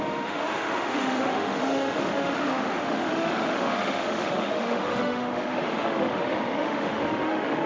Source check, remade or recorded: remade